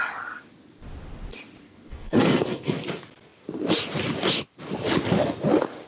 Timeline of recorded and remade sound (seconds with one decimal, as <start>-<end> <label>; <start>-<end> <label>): 0.0-1.6 recorded; 1.6-2.8 remade; 2.8-5.9 recorded